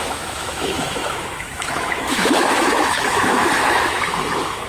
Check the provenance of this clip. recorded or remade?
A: remade